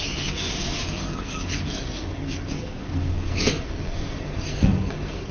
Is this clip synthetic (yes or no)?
yes